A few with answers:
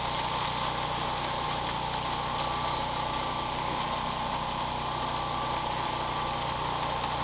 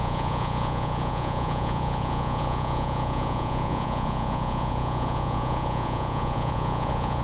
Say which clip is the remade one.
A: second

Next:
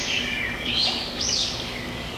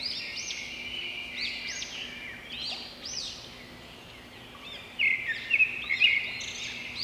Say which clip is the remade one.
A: first